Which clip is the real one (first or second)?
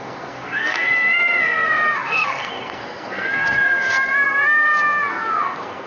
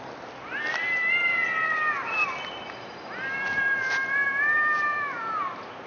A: second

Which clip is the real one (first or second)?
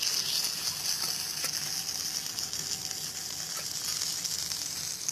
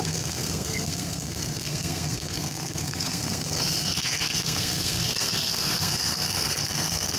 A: first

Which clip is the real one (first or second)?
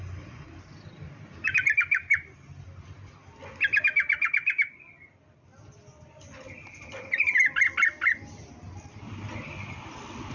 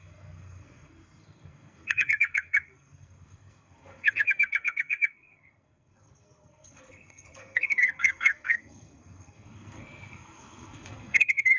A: first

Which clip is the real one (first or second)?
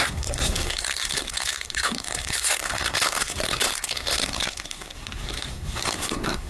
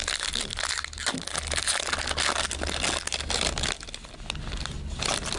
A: second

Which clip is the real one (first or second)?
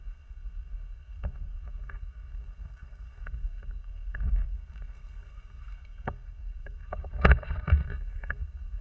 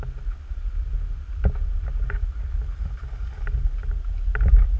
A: second